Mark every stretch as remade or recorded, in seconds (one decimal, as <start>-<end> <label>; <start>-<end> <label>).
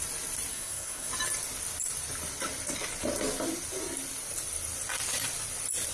0.0-0.5 recorded; 0.5-1.1 remade; 1.1-5.9 recorded